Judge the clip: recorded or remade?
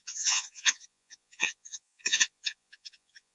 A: remade